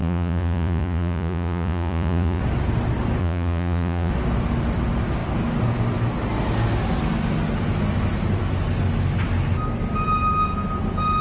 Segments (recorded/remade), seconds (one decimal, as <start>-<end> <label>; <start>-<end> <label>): 0.0-2.4 remade; 2.4-3.2 recorded; 3.2-4.1 remade; 4.1-11.2 recorded